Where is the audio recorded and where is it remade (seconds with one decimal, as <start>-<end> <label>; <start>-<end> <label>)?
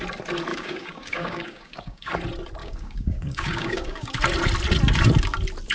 0.0-0.5 recorded; 0.5-2.1 remade; 2.1-2.6 recorded; 2.6-4.1 remade; 4.1-5.7 recorded